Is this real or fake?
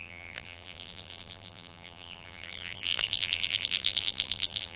fake